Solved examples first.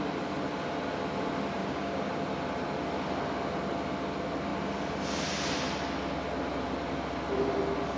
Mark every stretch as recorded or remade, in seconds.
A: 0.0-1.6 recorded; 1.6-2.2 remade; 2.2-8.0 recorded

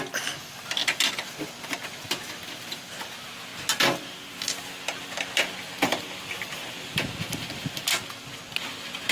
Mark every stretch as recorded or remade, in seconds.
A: 0.0-9.1 recorded